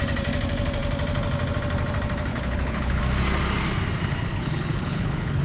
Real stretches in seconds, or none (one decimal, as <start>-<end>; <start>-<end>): 0.0-2.3; 3.0-4.3